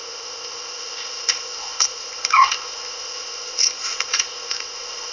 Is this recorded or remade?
remade